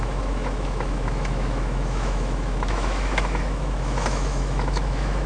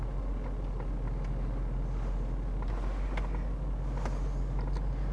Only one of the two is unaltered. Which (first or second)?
second